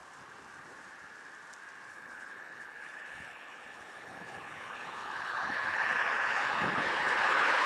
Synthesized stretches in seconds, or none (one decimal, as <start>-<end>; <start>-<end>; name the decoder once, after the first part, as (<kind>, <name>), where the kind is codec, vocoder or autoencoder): 1.9-7.7 (codec, HILCodec)